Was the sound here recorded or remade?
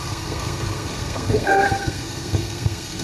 remade